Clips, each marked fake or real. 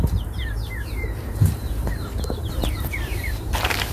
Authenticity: fake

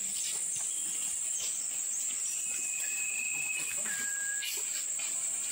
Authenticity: real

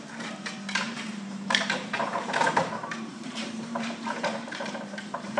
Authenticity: fake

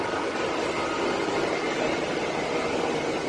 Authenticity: real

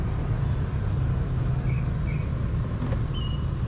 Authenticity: real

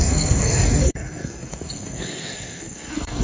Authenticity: fake